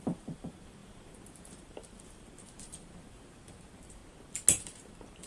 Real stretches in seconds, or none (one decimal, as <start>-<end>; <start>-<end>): 4.0-4.6